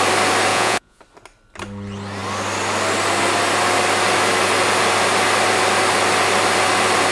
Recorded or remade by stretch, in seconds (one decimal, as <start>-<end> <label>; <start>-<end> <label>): 0.0-0.5 recorded; 0.5-1.0 remade; 1.0-7.1 recorded